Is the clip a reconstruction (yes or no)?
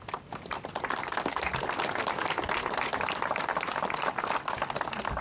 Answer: no